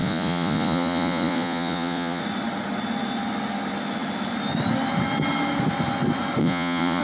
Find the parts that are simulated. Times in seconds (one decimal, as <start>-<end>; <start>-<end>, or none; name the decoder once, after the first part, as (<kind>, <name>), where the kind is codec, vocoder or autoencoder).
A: 0.0-2.2 (vocoder, Vocos); 6.4-7.0